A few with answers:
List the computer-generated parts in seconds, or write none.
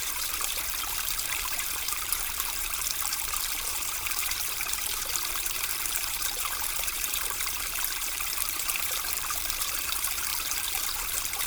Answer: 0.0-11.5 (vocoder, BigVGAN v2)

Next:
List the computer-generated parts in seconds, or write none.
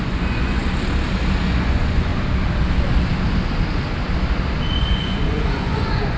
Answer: 0.0-0.6 (vocoder, Vocos); 1.4-2.1; 4.8-6.2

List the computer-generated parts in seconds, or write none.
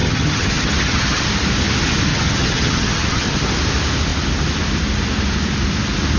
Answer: 0.0-1.2 (vocoder, HiFi-GAN); 2.1-3.5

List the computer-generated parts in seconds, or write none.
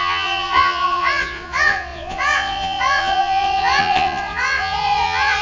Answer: 0.0-5.4 (vocoder, Vocos)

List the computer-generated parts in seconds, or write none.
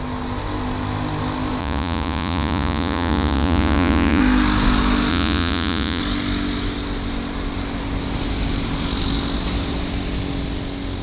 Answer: 1.6-4.2 (vocoder, Vocos); 5.1-6.0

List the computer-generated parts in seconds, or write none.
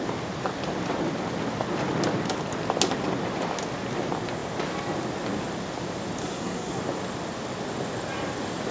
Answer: 6.2-6.8 (codec, SNAC)